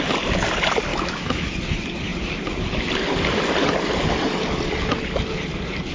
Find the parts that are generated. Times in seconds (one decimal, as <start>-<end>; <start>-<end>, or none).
0.9-1.5